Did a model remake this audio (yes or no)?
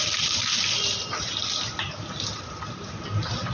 no